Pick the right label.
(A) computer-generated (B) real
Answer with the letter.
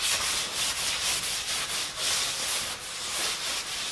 B